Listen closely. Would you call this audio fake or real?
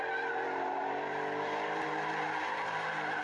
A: fake